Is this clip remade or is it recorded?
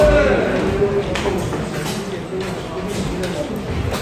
recorded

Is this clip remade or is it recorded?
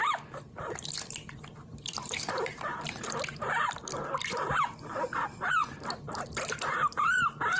remade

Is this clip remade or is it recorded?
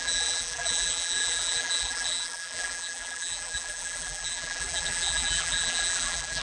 remade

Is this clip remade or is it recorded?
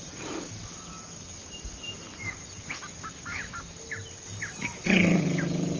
recorded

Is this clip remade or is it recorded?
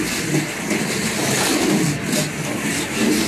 recorded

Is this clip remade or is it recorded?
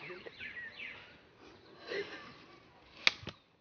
recorded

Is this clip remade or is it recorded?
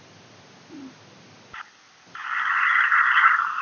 recorded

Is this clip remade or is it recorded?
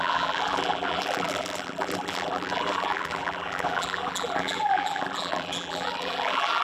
remade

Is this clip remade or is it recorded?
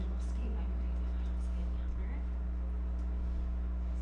recorded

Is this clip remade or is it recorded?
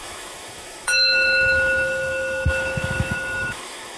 remade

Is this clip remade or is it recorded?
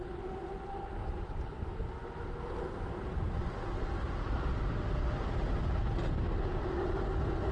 recorded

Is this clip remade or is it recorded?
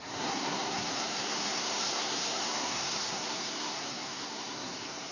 remade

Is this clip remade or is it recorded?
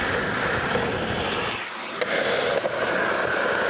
recorded